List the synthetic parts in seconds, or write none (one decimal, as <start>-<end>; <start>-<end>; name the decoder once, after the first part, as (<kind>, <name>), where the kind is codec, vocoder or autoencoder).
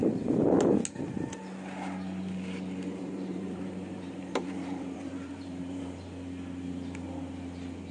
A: 3.0-5.8 (vocoder, BigVGAN v2)